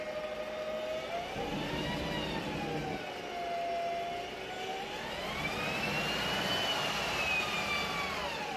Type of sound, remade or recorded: recorded